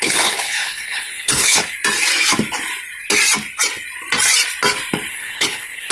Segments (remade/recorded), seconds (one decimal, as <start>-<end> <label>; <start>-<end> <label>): 0.0-1.6 remade; 1.6-5.1 recorded; 5.1-5.9 remade